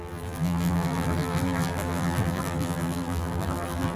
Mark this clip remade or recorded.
remade